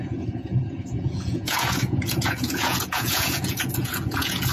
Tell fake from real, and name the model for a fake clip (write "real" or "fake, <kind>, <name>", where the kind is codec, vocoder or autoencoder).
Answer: fake, vocoder, Vocos